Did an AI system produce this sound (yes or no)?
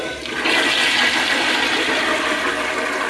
no